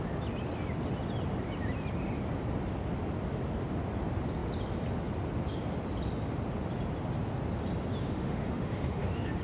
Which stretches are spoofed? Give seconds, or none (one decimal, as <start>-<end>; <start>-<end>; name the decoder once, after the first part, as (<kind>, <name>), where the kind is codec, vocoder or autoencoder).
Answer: 8.0-9.4 (autoencoder, DAC-VAE)